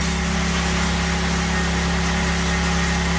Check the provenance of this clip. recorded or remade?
recorded